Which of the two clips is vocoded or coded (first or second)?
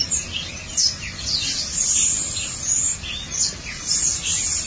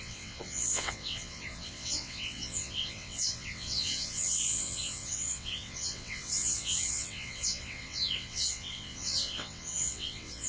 second